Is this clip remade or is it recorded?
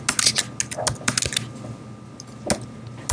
recorded